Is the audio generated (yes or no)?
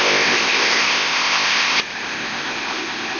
yes